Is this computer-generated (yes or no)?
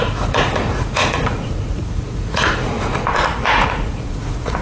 yes